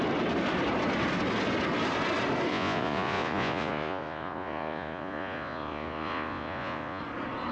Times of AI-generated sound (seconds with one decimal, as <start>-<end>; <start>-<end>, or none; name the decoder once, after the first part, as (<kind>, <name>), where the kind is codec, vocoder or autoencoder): 2.5-7.0 (vocoder, Vocos)